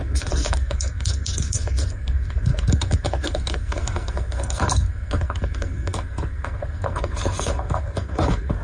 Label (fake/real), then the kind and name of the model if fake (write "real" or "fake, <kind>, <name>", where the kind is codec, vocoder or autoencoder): fake, codec, SNAC